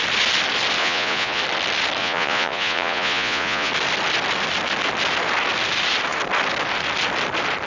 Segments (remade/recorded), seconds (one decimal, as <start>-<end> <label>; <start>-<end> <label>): 0.0-0.8 recorded; 0.8-1.4 remade; 1.4-2.0 recorded; 2.0-3.7 remade; 3.7-7.7 recorded